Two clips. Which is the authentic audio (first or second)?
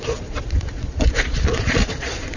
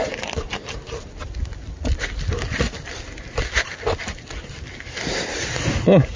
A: second